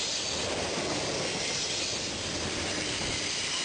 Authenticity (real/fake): real